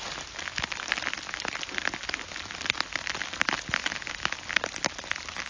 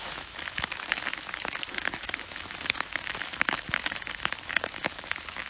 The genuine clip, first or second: first